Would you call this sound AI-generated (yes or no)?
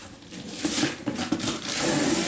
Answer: no